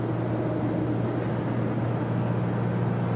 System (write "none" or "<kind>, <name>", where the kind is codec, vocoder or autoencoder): none